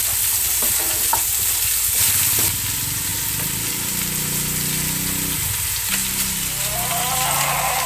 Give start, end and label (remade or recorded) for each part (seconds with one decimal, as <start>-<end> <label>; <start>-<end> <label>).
0.0-7.9 recorded